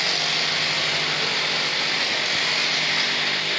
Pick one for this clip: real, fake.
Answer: real